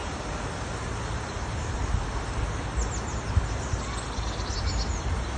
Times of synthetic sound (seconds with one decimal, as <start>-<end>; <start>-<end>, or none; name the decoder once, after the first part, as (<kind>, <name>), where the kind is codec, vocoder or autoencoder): 1.2-1.8 (vocoder, BigVGAN v2); 5.0-5.4